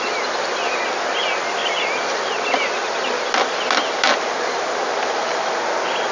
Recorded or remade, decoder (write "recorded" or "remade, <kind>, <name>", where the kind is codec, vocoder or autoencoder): recorded